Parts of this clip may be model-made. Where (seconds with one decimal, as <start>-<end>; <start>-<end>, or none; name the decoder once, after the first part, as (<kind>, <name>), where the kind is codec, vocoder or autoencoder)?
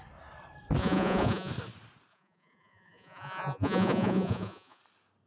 0.8-1.5 (vocoder, Vocos); 2.1-4.8